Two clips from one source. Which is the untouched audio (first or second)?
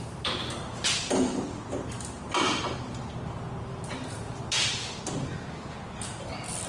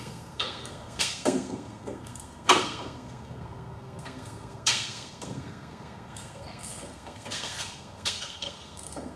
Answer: first